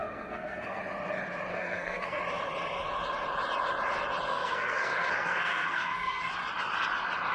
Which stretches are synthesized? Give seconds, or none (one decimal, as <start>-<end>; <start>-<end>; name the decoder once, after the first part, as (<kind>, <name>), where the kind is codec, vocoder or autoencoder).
0.0-0.8 (codec, SNAC); 1.5-2.2; 4.3-6.3